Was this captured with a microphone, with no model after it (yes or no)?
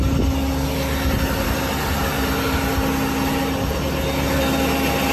yes